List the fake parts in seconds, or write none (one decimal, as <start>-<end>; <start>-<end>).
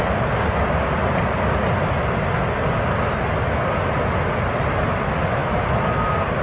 none